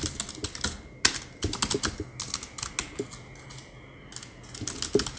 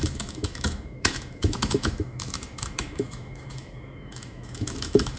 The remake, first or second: second